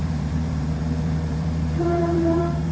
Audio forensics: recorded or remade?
remade